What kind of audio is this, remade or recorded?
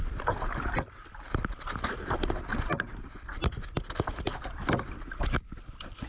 recorded